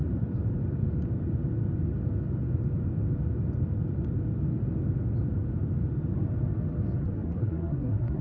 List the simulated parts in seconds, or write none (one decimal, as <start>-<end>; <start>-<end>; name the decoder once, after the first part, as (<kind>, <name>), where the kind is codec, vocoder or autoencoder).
7.0-8.2 (codec, SNAC)